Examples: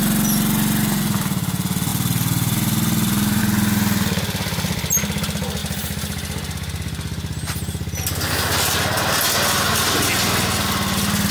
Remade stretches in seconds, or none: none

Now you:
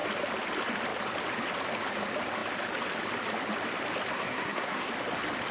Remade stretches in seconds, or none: 4.1-4.9 (codec, SNAC)

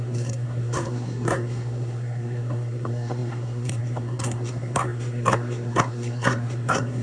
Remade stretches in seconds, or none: 0.0-7.0 (codec, SNAC)

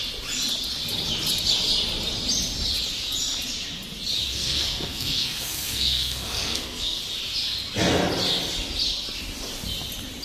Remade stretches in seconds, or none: 4.3-7.0 (codec, SNAC)

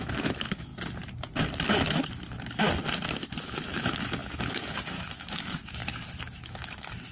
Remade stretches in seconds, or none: 0.0-0.7 (autoencoder, DAC-VAE); 3.4-5.8; 6.3-7.1

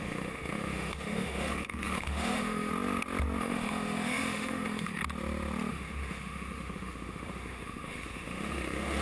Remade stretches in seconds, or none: 0.0-2.7 (autoencoder, DAC-VAE); 3.4-5.0; 5.7-9.0

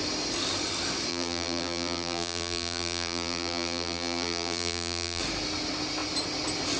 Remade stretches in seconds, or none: 1.1-5.2 (vocoder, BigVGAN v2)